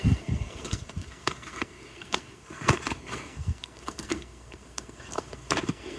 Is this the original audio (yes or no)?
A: no